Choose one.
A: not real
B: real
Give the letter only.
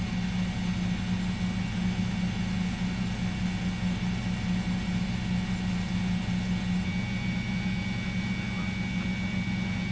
B